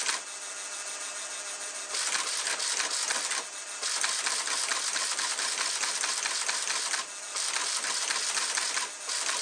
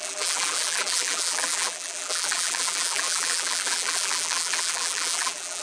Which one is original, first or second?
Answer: first